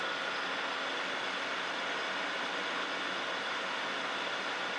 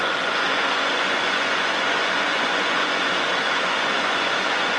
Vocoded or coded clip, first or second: second